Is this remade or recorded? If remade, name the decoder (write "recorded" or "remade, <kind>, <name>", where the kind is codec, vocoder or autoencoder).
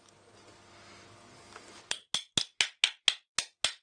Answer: recorded